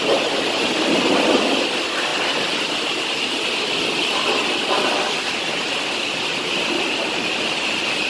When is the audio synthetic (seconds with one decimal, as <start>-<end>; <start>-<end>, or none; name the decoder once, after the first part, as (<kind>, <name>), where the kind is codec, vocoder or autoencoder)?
none